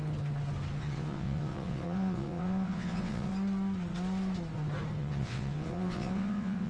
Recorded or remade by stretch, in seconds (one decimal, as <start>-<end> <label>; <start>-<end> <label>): 0.0-0.8 recorded; 0.8-3.3 remade; 3.3-5.0 recorded; 5.0-6.7 remade